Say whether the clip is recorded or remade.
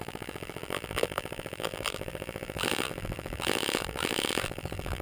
remade